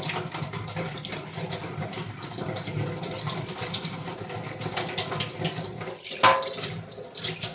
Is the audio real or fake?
real